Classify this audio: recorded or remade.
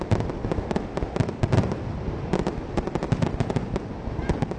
recorded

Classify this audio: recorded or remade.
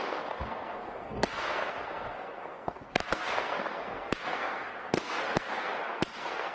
remade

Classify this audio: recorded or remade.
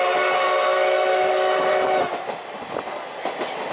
recorded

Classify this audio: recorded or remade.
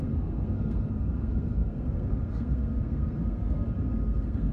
remade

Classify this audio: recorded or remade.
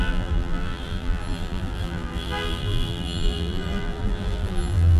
remade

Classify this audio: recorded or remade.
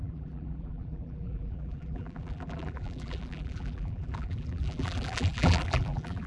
remade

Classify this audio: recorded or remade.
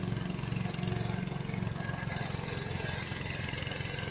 recorded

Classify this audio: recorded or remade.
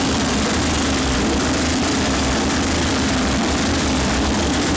remade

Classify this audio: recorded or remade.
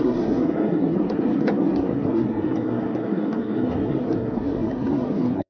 remade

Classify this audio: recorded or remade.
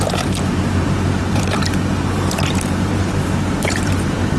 remade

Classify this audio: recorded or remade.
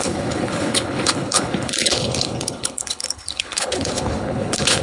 remade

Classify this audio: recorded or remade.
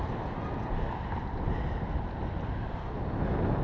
recorded